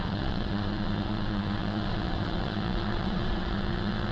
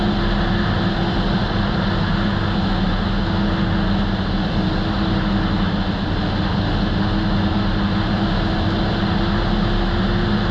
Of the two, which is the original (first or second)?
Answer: second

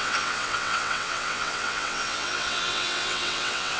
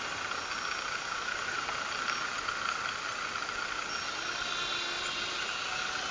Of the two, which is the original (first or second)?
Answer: second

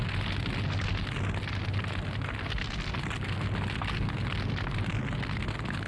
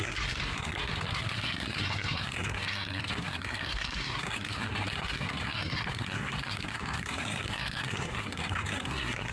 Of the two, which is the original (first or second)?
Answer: first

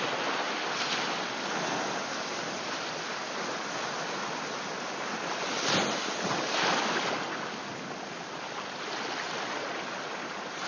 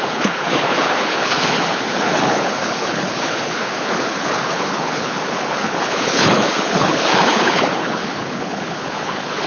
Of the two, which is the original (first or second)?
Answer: first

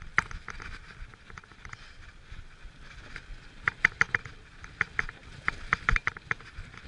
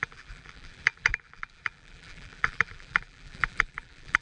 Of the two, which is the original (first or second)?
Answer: first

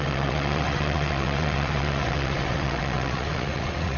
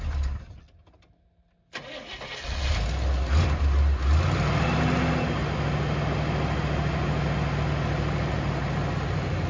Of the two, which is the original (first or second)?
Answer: second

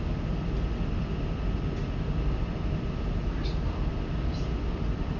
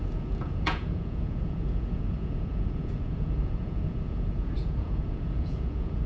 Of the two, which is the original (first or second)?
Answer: first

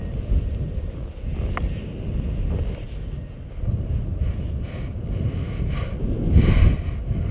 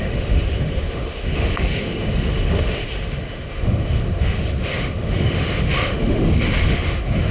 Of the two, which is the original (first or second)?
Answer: first